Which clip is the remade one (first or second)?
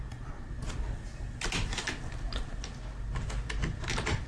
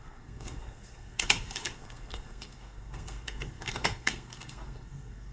second